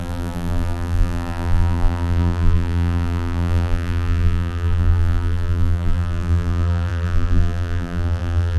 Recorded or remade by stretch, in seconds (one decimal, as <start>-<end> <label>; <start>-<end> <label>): 0.0-8.6 remade